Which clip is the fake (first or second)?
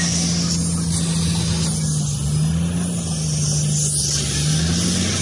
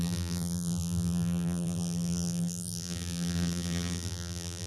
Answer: second